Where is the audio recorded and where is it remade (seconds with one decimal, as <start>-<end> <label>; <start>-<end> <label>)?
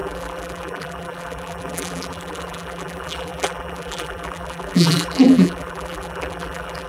0.0-6.9 remade